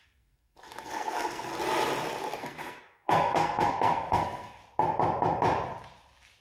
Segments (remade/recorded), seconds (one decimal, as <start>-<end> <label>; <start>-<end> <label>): 0.0-1.5 remade; 1.5-2.4 recorded; 2.4-4.6 remade; 4.6-6.4 recorded